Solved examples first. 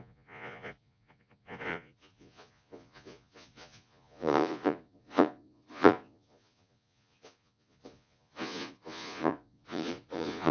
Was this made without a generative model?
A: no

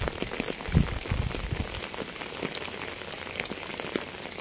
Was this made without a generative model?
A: yes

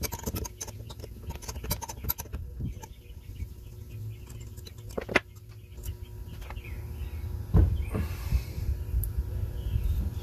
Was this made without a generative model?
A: yes